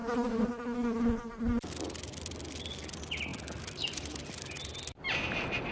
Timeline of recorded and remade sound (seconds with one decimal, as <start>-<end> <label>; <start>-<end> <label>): 0.0-5.7 recorded